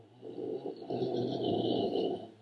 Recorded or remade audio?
recorded